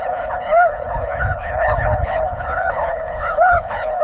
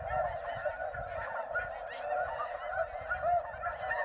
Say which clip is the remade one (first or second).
first